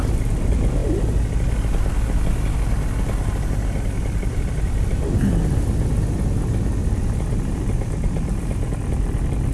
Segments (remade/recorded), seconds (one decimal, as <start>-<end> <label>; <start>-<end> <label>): 0.0-6.8 recorded; 6.8-7.6 remade; 7.6-9.5 recorded